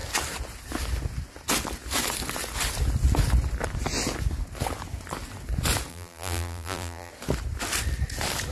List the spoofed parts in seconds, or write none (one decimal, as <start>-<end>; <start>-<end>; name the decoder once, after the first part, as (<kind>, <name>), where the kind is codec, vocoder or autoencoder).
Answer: 5.9-7.1 (vocoder, BigVGAN v2)